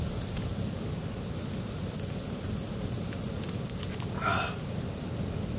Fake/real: real